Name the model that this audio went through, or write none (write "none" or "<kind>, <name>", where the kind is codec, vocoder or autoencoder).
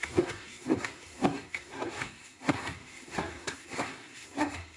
codec, SNAC